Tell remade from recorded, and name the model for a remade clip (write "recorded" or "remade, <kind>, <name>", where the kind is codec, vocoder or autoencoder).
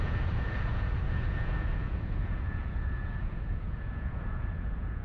remade, vocoder, Vocos